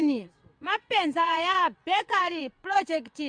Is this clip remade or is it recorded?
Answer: remade